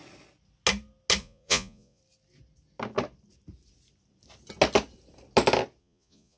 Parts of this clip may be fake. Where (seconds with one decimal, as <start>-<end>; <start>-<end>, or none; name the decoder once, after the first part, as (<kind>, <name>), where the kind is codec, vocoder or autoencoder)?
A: 1.2-2.0 (vocoder, Vocos); 5.8-6.4